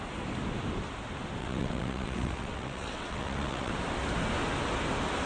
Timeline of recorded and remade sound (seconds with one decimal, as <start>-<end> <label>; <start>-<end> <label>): 0.0-1.4 recorded; 1.4-3.7 remade; 3.7-5.3 recorded